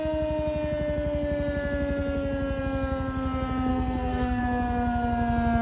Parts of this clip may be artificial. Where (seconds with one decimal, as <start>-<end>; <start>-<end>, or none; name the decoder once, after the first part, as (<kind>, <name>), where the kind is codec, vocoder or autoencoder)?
3.7-4.4 (codec, SNAC)